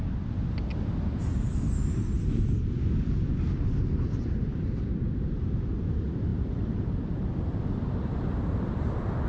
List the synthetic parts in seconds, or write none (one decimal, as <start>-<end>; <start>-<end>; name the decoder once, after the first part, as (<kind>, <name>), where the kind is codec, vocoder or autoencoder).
6.3-9.3 (vocoder, BigVGAN v2)